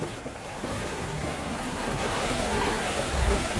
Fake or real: fake